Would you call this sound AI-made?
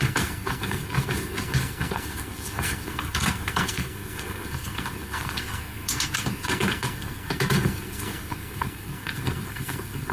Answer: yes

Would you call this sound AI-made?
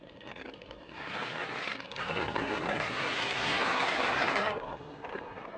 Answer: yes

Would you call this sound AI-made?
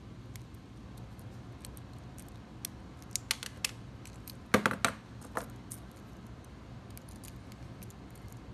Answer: no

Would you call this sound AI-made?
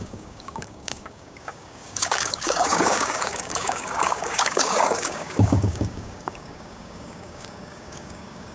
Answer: yes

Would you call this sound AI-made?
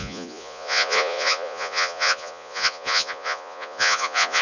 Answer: yes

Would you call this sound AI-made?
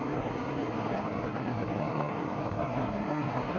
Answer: yes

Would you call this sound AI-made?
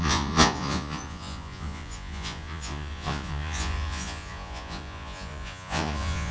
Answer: yes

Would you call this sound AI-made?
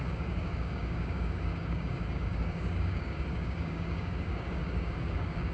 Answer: yes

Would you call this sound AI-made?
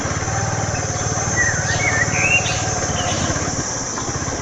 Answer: no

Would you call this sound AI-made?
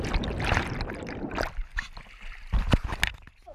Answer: no